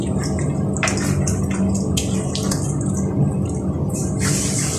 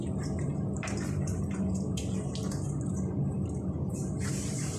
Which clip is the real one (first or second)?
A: first